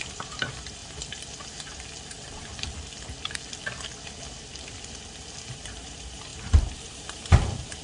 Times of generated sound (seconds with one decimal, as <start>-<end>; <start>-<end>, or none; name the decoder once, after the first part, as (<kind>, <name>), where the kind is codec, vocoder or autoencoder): 0.0-0.8 (vocoder, BigVGAN v2); 5.5-7.8

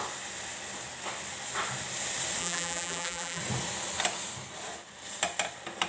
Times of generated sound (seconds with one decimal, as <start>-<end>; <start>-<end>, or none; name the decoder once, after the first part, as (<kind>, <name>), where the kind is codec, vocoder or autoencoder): 2.4-3.4 (vocoder, BigVGAN v2)

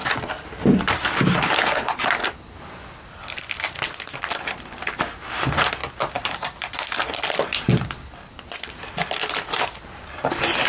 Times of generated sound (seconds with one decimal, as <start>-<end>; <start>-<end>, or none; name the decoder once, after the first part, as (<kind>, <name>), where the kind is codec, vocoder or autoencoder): 2.6-10.7 (vocoder, BigVGAN v2)

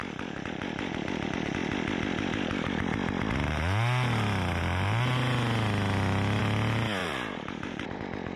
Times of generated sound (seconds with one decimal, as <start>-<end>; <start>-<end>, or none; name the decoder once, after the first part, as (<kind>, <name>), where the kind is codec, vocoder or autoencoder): 7.0-8.0 (vocoder, BigVGAN v2)